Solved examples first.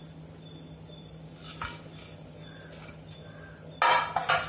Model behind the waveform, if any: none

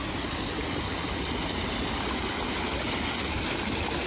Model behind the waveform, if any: none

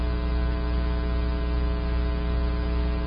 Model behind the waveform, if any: none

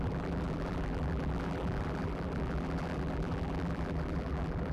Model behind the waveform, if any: vocoder, BigVGAN v2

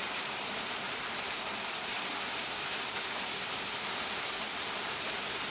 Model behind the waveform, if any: vocoder, BigVGAN v2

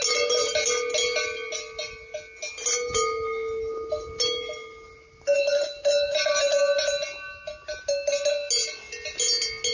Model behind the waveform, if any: none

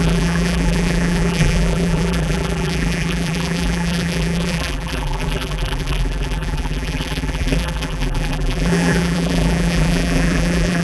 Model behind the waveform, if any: vocoder, BigVGAN v2